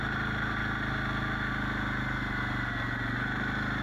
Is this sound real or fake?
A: real